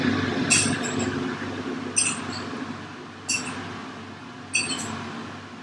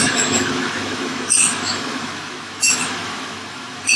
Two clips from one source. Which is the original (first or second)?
first